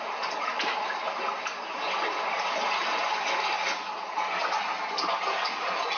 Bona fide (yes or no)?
yes